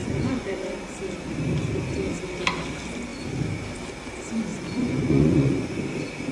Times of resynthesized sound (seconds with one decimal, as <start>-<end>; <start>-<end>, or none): 0.0-0.6; 4.5-5.8